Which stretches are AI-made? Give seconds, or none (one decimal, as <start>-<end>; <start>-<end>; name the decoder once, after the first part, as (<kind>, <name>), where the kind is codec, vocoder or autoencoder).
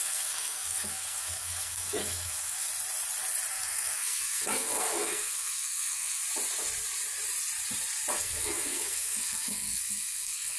0.0-2.7 (codec, SNAC); 3.5-6.2; 8.2-10.6